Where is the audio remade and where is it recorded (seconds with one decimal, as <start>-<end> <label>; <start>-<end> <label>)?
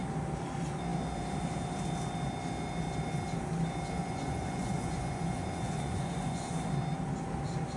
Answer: 0.0-4.0 recorded; 4.0-6.7 remade; 6.7-7.8 recorded